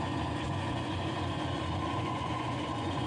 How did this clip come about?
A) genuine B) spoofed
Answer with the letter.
B